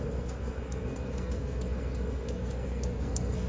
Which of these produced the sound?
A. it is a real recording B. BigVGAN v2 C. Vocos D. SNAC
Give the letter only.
D